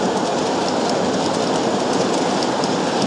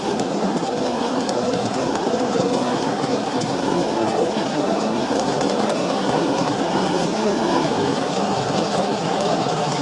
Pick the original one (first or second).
first